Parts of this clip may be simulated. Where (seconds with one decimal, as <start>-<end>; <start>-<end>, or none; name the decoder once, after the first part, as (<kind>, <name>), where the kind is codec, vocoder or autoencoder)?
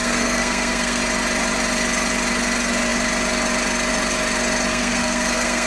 0.0-1.0 (codec, SNAC); 4.7-5.7